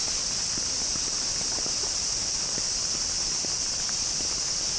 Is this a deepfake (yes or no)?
no